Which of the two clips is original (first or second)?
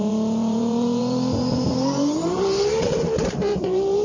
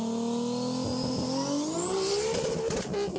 second